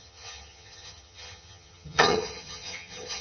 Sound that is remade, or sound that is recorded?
remade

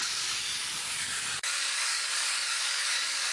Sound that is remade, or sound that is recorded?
remade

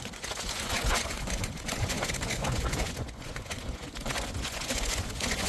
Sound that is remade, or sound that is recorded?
remade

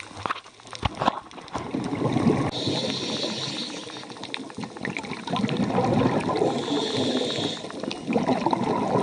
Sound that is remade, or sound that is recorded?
recorded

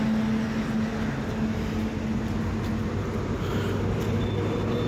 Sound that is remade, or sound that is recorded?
recorded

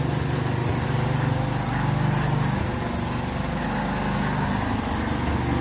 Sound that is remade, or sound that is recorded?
recorded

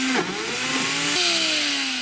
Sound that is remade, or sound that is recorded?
recorded